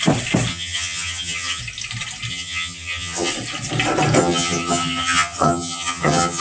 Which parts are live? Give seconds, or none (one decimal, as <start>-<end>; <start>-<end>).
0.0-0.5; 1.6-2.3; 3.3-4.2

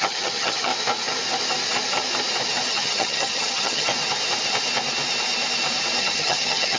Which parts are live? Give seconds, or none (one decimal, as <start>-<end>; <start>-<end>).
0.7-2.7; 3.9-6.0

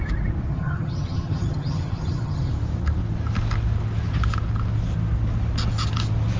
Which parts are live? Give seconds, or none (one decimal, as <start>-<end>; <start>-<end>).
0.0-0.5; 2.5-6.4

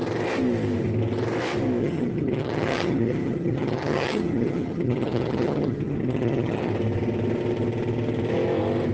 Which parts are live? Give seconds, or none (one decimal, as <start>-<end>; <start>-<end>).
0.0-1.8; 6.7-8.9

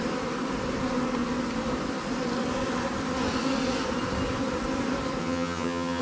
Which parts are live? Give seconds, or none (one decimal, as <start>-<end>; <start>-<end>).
0.0-5.2

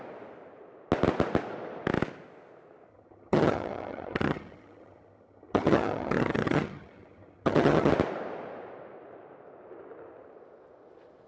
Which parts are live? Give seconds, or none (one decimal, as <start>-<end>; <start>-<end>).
0.0-2.9; 7.9-11.3